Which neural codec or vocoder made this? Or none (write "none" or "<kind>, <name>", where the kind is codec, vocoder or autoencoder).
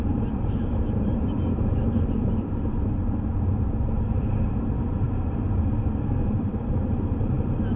vocoder, BigVGAN v2